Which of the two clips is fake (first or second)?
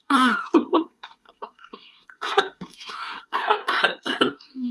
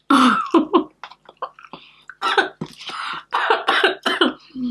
first